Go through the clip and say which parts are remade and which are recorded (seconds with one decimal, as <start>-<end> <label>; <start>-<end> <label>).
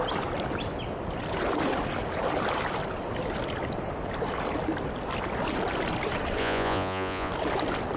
0.0-6.4 recorded; 6.4-7.3 remade; 7.3-8.0 recorded